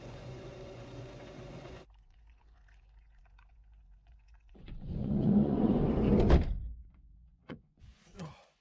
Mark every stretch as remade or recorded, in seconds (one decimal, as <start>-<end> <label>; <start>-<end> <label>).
0.0-5.8 remade; 5.8-6.8 recorded; 6.8-8.6 remade